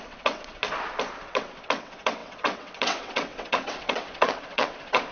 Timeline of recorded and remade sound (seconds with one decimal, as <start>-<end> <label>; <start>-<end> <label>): 0.0-0.6 remade; 0.6-1.2 recorded; 1.2-5.1 remade